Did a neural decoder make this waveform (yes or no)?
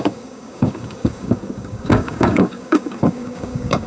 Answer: yes